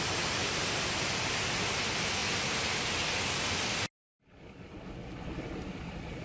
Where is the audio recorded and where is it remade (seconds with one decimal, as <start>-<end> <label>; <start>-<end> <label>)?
0.0-6.2 recorded